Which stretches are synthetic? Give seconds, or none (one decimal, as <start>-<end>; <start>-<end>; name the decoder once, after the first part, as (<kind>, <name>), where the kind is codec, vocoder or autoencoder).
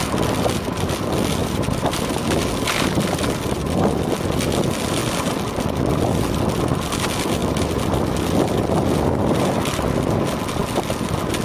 1.4-2.2 (vocoder, BigVGAN v2)